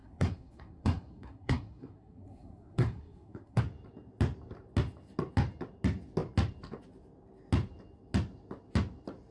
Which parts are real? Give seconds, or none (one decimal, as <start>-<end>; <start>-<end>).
3.6-9.3